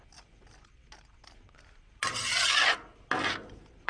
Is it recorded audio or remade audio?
recorded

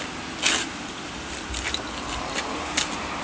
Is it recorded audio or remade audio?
recorded